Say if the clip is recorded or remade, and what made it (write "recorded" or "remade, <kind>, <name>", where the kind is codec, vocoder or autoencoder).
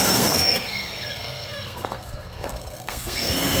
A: remade, codec, SNAC